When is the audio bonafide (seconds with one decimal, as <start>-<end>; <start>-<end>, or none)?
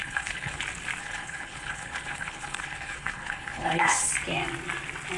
0.6-1.0; 4.1-5.2